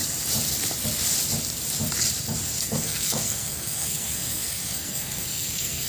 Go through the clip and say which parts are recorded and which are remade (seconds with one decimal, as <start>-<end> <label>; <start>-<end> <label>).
0.0-2.6 recorded; 2.6-5.9 remade